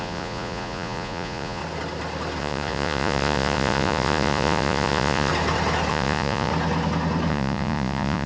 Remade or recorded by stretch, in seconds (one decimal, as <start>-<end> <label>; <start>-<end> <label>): 0.0-1.6 remade; 1.6-2.4 recorded; 2.4-5.3 remade; 5.3-5.9 recorded; 5.9-6.5 remade; 6.5-7.3 recorded; 7.3-8.3 remade